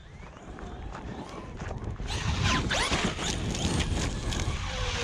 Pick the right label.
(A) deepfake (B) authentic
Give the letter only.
B